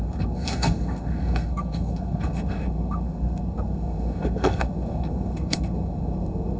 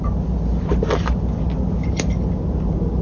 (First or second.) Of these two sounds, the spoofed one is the first